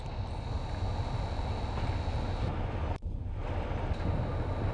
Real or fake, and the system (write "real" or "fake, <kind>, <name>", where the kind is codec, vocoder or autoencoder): real